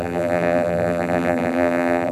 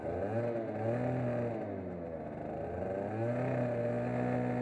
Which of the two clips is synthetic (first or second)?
first